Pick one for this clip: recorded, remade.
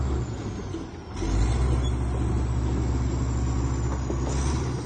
recorded